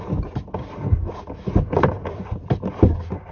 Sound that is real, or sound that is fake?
real